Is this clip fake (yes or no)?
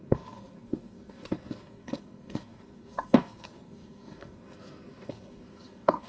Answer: yes